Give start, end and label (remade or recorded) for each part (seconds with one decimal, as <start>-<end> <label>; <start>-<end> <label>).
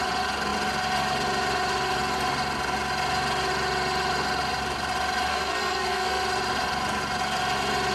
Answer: 0.0-5.3 recorded; 5.3-6.2 remade; 6.2-7.9 recorded